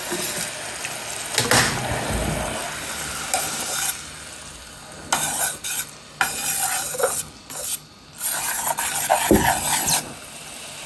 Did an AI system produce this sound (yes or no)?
no